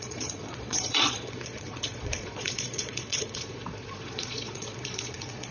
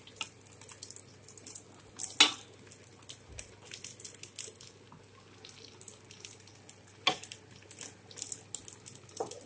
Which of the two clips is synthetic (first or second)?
first